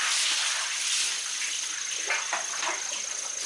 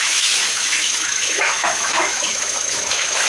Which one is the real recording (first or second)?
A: first